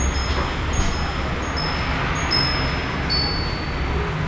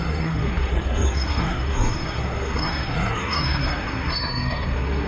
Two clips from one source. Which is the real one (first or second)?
first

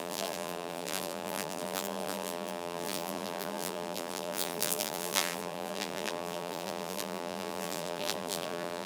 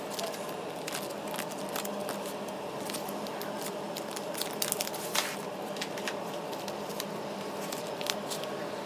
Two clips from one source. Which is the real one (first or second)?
second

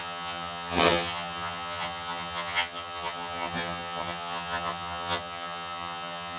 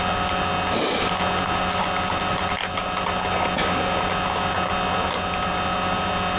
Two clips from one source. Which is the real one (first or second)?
second